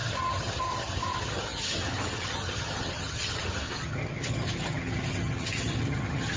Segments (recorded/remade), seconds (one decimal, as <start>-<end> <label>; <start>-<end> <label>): 0.0-6.4 remade